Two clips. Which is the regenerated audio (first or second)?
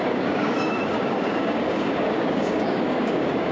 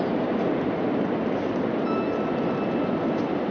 first